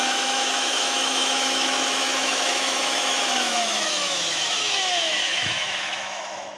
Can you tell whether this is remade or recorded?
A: remade